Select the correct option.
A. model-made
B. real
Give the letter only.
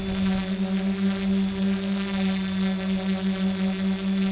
B